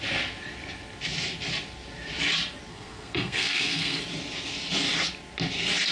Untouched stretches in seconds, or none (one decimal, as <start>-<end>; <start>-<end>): 0.0-2.7; 4.0-5.9